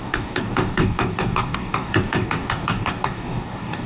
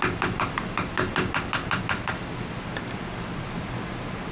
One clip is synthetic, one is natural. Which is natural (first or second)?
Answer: second